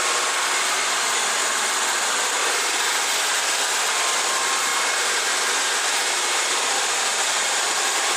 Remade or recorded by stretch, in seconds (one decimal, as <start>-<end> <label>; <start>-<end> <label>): 0.0-4.7 remade; 4.7-7.2 recorded; 7.2-8.2 remade